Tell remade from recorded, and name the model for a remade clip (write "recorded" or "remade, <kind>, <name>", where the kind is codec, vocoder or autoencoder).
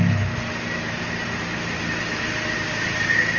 recorded